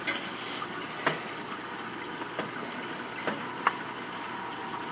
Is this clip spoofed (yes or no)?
no